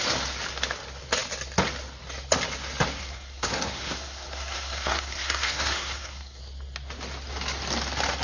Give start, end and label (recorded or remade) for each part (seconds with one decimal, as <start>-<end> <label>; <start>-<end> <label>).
0.0-3.0 recorded; 3.0-6.4 remade; 6.4-8.2 recorded